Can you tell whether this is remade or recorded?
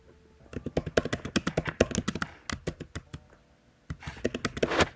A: recorded